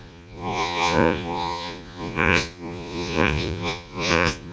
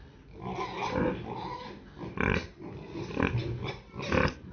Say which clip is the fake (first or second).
first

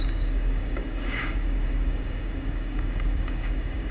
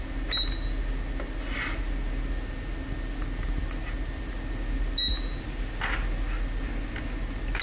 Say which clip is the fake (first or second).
first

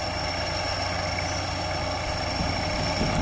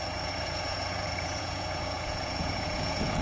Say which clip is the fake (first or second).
second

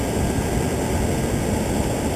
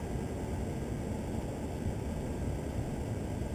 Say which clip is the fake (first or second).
first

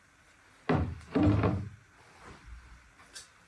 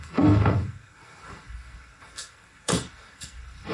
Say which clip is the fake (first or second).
second